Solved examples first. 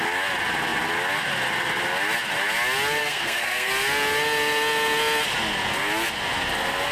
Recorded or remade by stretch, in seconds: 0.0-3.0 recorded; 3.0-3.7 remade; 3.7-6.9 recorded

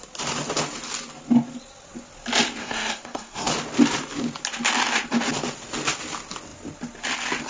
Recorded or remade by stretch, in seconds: 0.0-2.6 recorded; 2.6-3.5 remade; 3.5-7.5 recorded

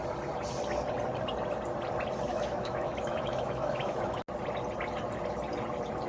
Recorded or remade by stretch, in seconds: 0.0-2.3 recorded; 2.3-4.2 remade; 4.2-6.1 recorded

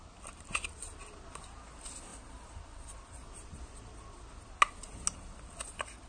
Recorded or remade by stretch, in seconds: 0.0-6.1 recorded

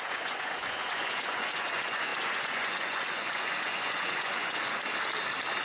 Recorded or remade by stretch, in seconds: 0.0-4.8 remade; 4.8-5.6 recorded